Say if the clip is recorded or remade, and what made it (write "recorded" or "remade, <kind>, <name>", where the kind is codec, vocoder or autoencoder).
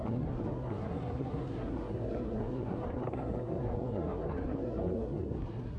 remade, codec, SNAC